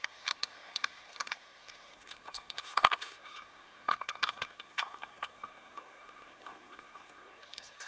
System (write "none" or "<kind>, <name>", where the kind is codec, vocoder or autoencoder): codec, SNAC